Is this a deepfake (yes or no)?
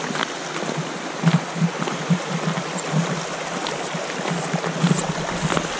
no